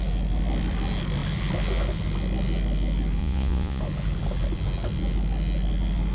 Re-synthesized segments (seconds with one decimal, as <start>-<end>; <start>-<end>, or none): 3.2-3.8